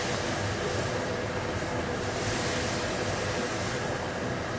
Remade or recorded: recorded